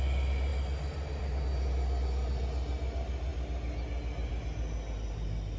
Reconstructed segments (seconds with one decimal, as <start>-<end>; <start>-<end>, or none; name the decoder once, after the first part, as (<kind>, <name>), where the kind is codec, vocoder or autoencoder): none